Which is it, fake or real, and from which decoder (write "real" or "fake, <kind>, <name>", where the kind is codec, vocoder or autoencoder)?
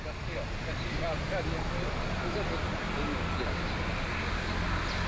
real